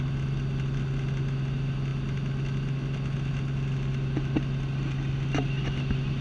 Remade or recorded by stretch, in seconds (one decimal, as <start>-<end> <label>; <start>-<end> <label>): 0.0-6.2 recorded